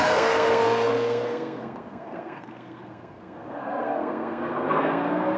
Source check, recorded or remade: remade